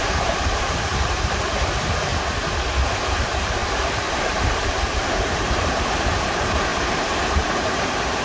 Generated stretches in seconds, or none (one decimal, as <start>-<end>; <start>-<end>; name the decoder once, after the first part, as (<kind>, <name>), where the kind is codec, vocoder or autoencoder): 0.0-2.1 (vocoder, BigVGAN v2); 2.9-8.2